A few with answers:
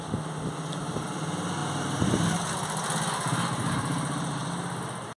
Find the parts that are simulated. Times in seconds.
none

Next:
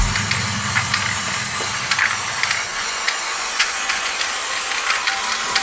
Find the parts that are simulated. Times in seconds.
2.7-4.2

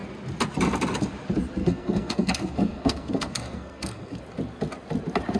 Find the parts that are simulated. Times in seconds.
1.6-4.2

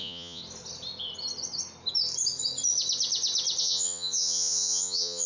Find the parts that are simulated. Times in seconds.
0.0-0.4; 3.6-5.3

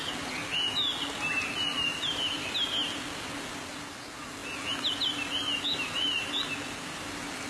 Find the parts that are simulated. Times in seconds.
none